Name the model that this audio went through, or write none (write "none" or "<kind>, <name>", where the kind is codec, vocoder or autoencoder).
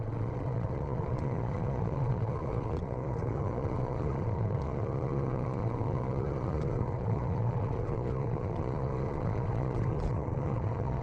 vocoder, Vocos